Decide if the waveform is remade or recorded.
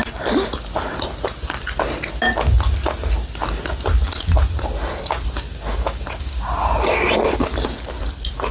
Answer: recorded